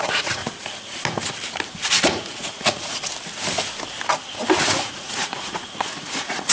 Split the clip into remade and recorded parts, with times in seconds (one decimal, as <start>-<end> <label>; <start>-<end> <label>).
0.0-0.4 remade; 0.4-1.7 recorded; 1.7-3.1 remade; 3.1-4.6 recorded; 4.6-6.5 remade